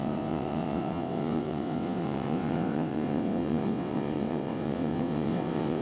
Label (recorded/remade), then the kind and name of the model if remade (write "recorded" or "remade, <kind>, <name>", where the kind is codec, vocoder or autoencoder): remade, vocoder, WaveNeXt